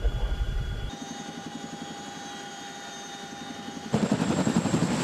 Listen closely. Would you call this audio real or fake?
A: fake